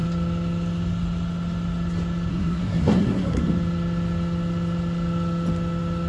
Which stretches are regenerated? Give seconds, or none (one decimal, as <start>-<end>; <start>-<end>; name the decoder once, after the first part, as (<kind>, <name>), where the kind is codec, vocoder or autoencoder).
2.3-3.4 (codec, SNAC)